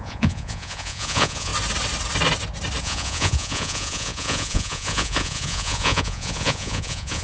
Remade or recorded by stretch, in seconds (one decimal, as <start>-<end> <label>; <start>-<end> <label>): 0.0-1.5 remade; 1.5-2.8 recorded; 2.8-7.2 remade